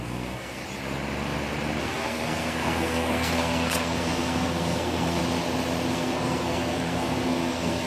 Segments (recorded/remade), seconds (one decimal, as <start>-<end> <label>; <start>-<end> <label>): 0.0-0.6 remade; 0.6-1.8 recorded; 1.8-5.2 remade; 5.2-5.9 recorded; 5.9-7.9 remade